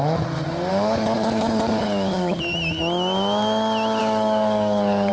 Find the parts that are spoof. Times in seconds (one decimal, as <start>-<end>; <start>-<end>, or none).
0.7-2.4; 4.0-5.1